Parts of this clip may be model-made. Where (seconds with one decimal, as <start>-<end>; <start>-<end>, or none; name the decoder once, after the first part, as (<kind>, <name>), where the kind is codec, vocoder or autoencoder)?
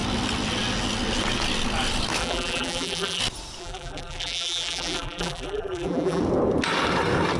2.2-3.2 (vocoder, BigVGAN v2); 3.6-6.2